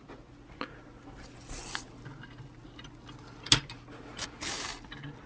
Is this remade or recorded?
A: recorded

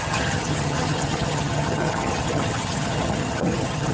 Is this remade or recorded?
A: remade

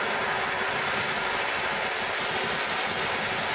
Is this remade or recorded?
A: recorded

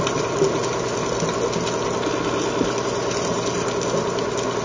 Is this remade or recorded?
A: recorded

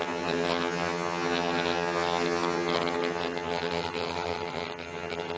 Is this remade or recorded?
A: remade